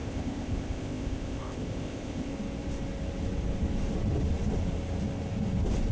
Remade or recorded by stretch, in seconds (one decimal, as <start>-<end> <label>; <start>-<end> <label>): 0.0-2.3 remade; 2.3-5.9 recorded